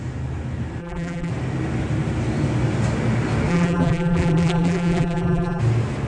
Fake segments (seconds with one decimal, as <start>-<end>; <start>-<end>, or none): 0.8-1.3; 3.5-5.6